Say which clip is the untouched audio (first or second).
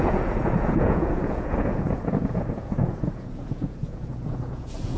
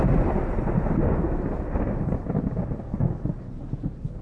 second